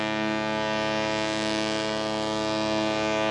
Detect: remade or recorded recorded